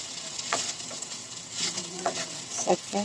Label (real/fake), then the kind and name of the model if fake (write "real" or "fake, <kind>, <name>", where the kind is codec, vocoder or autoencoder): fake, vocoder, WaveNeXt